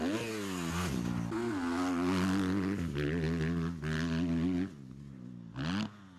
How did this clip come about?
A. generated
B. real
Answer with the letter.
B